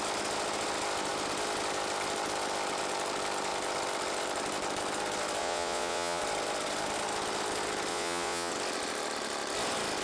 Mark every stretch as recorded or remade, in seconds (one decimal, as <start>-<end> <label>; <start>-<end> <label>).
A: 0.0-5.4 recorded; 5.4-6.2 remade; 6.2-7.9 recorded; 7.9-8.5 remade; 8.5-10.0 recorded